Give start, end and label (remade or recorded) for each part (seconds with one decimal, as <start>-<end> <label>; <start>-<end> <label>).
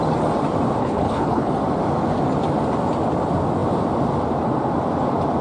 0.0-0.8 recorded; 0.8-1.5 remade; 1.5-5.4 recorded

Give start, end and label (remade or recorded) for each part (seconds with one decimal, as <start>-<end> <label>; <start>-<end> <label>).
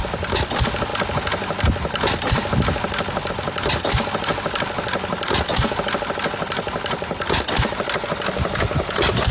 0.0-9.3 recorded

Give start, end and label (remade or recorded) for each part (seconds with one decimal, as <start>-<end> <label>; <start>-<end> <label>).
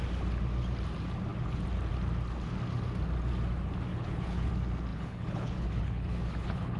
0.0-3.9 recorded; 3.9-4.5 remade; 4.5-4.9 recorded; 4.9-6.8 remade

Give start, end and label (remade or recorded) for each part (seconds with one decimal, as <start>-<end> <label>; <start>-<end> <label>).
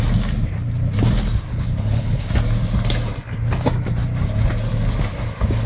0.0-1.5 recorded; 1.5-2.3 remade; 2.3-5.7 recorded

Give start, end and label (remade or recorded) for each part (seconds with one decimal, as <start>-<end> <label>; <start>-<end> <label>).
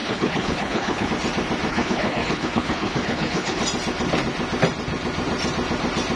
0.0-1.1 remade; 1.1-1.7 recorded; 1.7-3.6 remade; 3.6-6.2 recorded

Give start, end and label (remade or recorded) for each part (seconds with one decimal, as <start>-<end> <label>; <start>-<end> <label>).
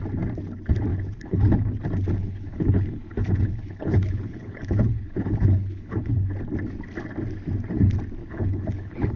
0.0-0.9 recorded; 0.9-1.7 remade; 1.7-2.2 recorded; 2.2-6.3 remade; 6.3-8.2 recorded; 8.2-9.2 remade